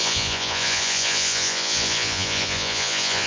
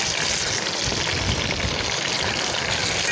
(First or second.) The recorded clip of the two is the second